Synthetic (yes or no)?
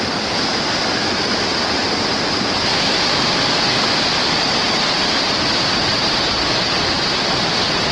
no